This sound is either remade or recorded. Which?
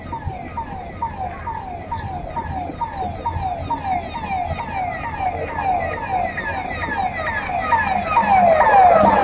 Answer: recorded